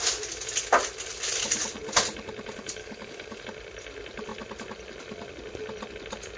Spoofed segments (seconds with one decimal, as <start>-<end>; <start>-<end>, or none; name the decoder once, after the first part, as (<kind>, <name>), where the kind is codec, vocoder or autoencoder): 2.8-3.4 (codec, DAC)

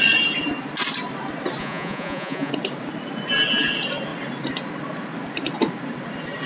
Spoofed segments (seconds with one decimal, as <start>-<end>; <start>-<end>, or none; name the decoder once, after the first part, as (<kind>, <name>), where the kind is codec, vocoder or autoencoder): 1.6-2.5 (vocoder, Vocos)